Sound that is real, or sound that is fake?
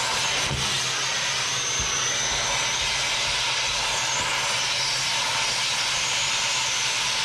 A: real